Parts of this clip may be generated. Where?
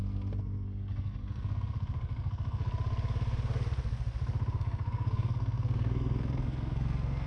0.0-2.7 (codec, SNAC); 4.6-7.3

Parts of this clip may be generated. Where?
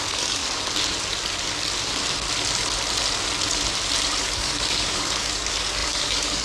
0.0-0.4 (codec, DAC); 4.2-6.4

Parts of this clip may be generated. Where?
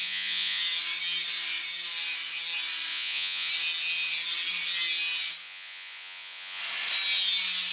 0.0-0.6 (vocoder, Vocos); 2.9-3.5; 5.4-6.6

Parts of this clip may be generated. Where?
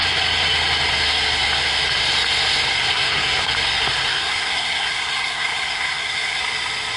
2.9-3.5 (codec, SNAC); 4.1-6.4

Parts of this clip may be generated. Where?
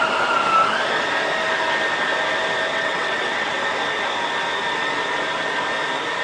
2.7-3.5 (vocoder, WaveNeXt)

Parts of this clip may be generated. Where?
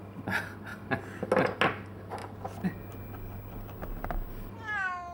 none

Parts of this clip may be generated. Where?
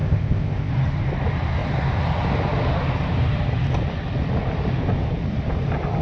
0.0-0.7 (codec, ZipCodec)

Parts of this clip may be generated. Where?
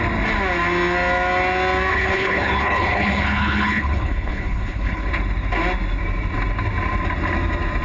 1.9-5.1 (codec, HILCodec)